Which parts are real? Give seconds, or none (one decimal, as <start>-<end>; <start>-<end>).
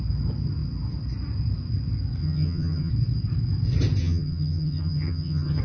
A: 0.0-2.2; 2.9-4.0